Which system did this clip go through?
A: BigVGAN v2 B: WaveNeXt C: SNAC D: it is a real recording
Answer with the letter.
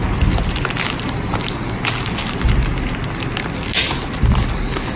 D